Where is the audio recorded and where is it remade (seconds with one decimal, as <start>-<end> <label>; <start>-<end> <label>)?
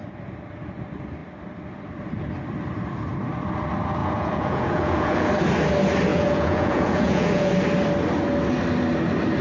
0.0-4.0 recorded; 4.0-5.3 remade; 5.3-6.1 recorded; 6.1-7.5 remade; 7.5-9.4 recorded